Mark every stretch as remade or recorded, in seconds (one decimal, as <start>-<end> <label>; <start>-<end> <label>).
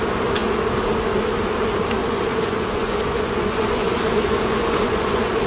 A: 0.0-2.0 recorded; 2.0-5.5 remade